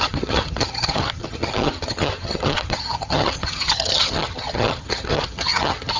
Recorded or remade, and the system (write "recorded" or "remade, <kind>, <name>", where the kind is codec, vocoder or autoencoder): remade, vocoder, HiFi-GAN